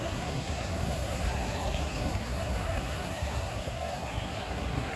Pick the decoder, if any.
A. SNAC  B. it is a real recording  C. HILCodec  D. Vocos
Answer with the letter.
A